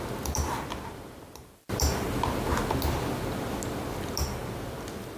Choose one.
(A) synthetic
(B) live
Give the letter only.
B